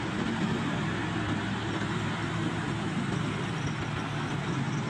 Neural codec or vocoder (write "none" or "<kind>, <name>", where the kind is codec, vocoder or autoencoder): none